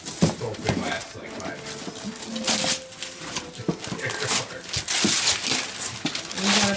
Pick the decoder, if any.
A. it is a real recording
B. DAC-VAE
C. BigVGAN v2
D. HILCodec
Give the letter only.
A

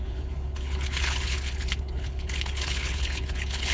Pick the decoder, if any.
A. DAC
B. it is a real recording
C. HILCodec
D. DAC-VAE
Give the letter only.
C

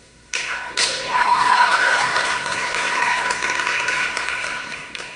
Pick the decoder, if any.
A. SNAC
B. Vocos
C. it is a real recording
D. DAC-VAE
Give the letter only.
A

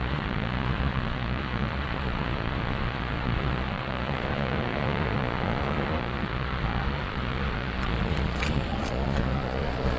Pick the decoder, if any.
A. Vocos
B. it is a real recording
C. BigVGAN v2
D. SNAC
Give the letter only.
A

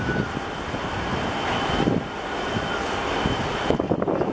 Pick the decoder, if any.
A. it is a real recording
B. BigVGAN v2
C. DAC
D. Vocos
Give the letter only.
A